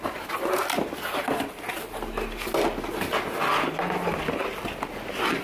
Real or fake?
real